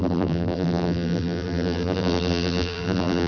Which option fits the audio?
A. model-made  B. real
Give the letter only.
A